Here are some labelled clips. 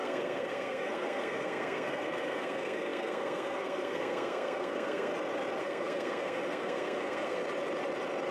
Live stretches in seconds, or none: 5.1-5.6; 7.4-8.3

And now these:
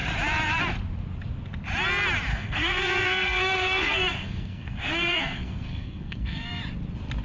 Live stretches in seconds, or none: 0.0-2.3; 6.6-7.2

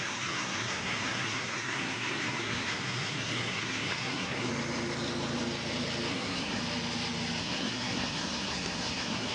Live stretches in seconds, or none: 4.5-6.1; 6.6-7.4